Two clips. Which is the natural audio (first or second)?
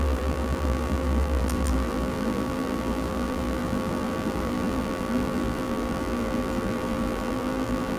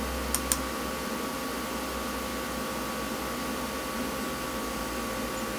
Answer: second